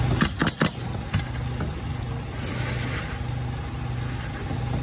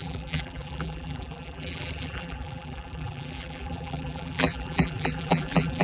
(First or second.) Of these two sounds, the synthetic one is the second